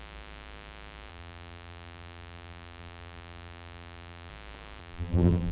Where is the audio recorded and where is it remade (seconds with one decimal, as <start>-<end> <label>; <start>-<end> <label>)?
0.0-1.1 recorded; 1.1-4.3 remade; 4.3-4.8 recorded; 4.8-5.5 remade